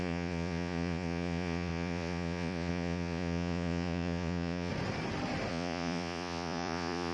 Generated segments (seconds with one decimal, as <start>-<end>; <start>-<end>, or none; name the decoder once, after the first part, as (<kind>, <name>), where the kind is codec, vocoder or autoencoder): 0.0-4.7 (vocoder, Vocos); 5.5-7.1

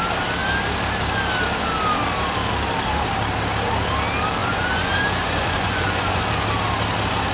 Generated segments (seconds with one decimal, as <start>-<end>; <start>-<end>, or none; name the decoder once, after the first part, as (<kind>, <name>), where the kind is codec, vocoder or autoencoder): 4.4-6.2 (vocoder, Vocos)